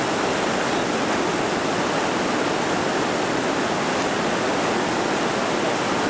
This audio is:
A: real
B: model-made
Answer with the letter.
A